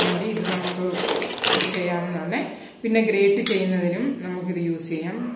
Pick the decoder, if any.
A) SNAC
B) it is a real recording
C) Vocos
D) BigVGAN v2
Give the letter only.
B